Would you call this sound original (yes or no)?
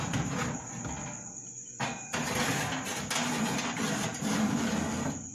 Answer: yes